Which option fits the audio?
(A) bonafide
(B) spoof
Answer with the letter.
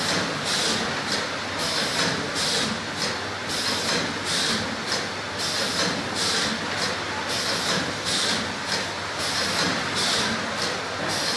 A